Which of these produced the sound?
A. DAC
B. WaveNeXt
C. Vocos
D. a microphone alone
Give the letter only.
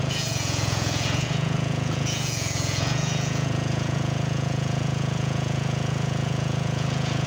C